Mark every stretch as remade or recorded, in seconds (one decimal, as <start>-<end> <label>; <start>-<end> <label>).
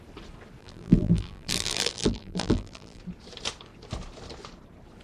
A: 0.0-0.6 recorded; 0.6-3.0 remade; 3.0-5.0 recorded